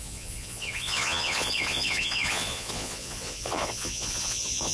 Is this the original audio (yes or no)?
no